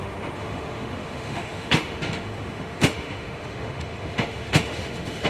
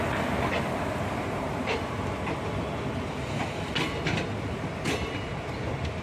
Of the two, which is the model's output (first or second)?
first